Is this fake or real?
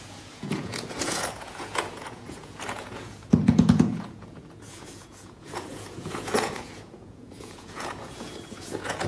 fake